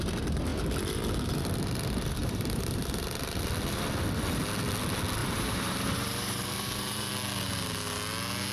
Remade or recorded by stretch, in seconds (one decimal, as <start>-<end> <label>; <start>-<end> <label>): 0.0-2.2 recorded; 2.2-2.8 remade; 2.8-5.2 recorded; 5.2-7.1 remade; 7.1-8.5 recorded

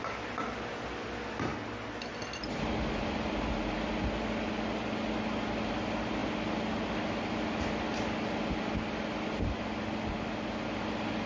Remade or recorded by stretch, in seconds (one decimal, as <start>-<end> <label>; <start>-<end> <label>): 0.0-11.3 recorded

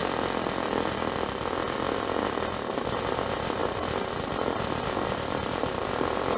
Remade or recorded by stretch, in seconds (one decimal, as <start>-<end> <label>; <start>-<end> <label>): 0.0-2.5 recorded; 2.5-6.4 remade

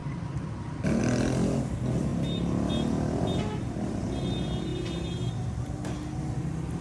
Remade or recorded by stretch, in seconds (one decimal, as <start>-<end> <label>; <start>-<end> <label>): 0.0-1.0 remade; 1.0-4.7 recorded; 4.7-5.3 remade; 5.3-6.8 recorded

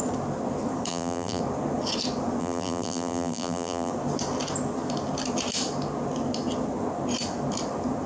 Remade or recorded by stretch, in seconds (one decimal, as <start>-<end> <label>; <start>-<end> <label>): 0.0-0.9 recorded; 0.9-1.4 remade; 1.4-2.4 recorded; 2.4-3.9 remade; 3.9-8.1 recorded

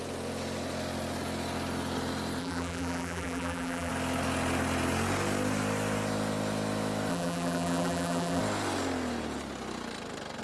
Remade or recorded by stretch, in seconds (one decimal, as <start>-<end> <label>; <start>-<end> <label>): 0.0-2.4 recorded; 2.4-3.9 remade; 3.9-7.1 recorded; 7.1-8.4 remade; 8.4-10.4 recorded

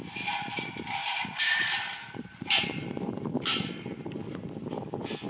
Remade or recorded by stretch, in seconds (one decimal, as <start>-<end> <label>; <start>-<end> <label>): 0.0-1.0 recorded; 1.0-4.2 remade; 4.2-5.3 recorded

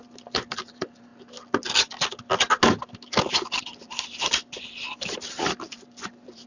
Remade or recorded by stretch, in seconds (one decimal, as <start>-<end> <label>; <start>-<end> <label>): 0.0-1.1 remade; 1.1-3.3 recorded; 3.3-6.5 remade